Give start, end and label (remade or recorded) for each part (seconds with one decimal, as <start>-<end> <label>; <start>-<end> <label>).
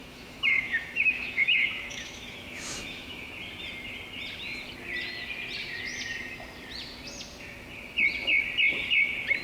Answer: 0.0-3.3 remade; 3.3-9.4 recorded